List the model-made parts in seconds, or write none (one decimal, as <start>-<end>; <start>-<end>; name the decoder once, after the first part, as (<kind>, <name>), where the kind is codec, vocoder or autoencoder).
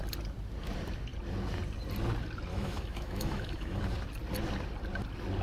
2.5-3.8 (autoencoder, DAC-VAE)